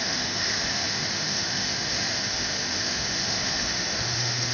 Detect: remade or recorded remade